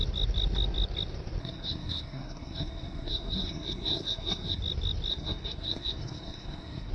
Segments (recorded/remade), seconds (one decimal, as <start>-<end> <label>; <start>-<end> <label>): 0.0-1.4 recorded; 1.4-4.6 remade; 4.6-5.1 recorded; 5.1-6.9 remade